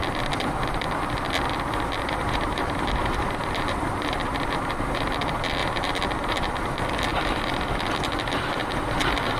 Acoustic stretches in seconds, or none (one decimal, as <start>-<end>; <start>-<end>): 0.0-2.2; 5.0-5.6; 6.5-9.4